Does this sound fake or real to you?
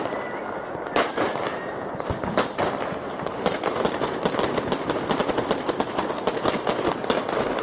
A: real